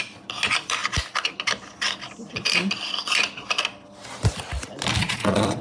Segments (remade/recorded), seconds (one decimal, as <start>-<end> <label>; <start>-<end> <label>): 0.0-5.0 recorded; 5.0-5.6 remade

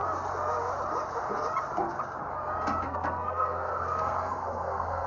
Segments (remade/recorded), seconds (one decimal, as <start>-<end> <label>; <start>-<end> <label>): 0.0-2.8 recorded; 2.8-5.1 remade

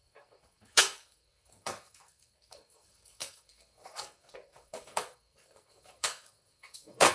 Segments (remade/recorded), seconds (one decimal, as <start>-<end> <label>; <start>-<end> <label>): 0.0-7.1 remade

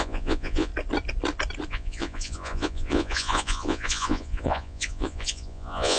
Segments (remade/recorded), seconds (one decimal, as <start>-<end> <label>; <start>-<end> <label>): 0.0-0.7 remade; 0.7-1.7 recorded; 1.7-6.0 remade

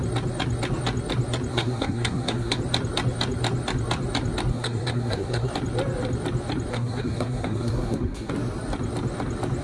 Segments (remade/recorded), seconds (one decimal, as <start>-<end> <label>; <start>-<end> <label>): 0.0-1.5 recorded; 1.5-2.6 remade; 2.6-4.5 recorded; 4.5-5.5 remade; 5.5-6.7 recorded; 6.7-8.3 remade; 8.3-9.6 recorded

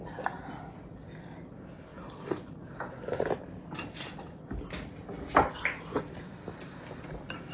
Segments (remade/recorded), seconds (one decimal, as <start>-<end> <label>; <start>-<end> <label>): 0.0-7.5 recorded

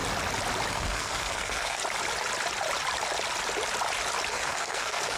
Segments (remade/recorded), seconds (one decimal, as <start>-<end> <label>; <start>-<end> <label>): 0.0-0.7 recorded; 0.7-1.8 remade; 1.8-4.3 recorded; 4.3-5.2 remade